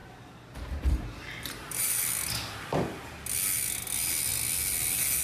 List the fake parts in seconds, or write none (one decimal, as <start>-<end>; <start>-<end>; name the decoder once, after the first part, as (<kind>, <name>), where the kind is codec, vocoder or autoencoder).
0.0-2.0 (vocoder, BigVGAN v2)